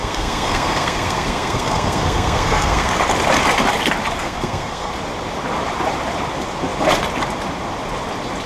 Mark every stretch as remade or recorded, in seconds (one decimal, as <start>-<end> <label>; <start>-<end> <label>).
0.0-2.9 remade; 2.9-4.2 recorded; 4.2-4.9 remade; 4.9-8.5 recorded